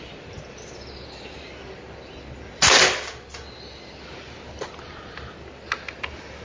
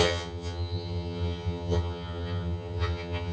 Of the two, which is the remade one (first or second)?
second